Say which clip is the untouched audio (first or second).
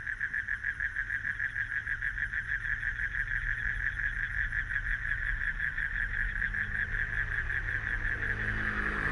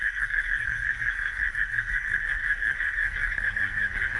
first